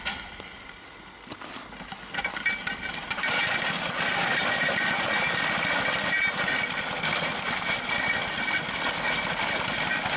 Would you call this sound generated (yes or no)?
no